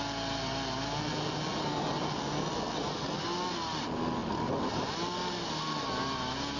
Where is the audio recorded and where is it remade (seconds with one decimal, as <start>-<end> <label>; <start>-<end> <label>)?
0.0-6.6 recorded